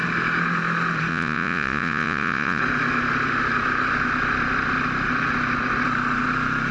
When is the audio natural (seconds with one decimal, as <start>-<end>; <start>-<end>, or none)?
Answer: 0.0-1.1; 2.6-6.7

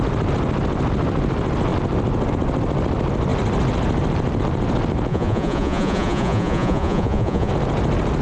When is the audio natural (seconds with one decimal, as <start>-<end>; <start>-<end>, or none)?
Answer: 0.0-5.1; 7.5-8.2

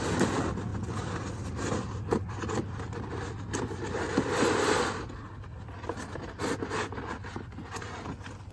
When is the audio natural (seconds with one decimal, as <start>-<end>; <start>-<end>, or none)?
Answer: 0.0-8.5